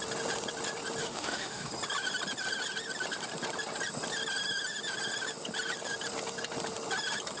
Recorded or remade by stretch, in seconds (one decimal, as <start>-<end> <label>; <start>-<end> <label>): 0.0-1.0 recorded; 1.0-1.7 remade; 1.7-7.4 recorded